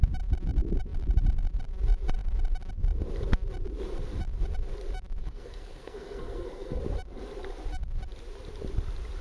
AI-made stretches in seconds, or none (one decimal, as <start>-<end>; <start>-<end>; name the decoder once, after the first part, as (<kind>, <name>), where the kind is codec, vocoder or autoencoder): 5.2-6.8 (codec, SNAC)